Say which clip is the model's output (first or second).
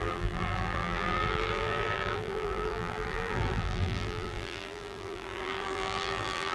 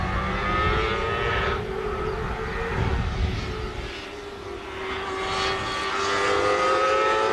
first